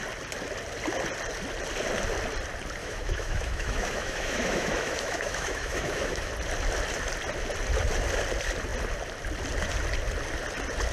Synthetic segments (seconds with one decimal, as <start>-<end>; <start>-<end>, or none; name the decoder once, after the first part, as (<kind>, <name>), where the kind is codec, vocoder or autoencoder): 2.8-6.3 (autoencoder, DAC-VAE)